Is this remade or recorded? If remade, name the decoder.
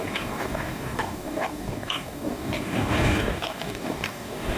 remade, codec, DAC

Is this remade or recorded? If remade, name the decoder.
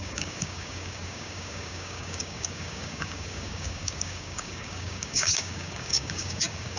remade, codec, DAC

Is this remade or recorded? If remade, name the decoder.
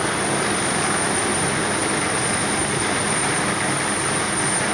recorded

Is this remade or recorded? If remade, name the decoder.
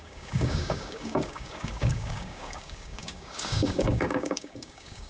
remade, codec, DAC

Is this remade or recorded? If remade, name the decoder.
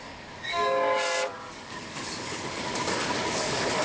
remade, codec, DAC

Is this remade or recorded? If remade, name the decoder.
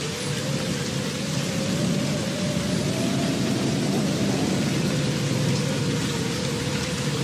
recorded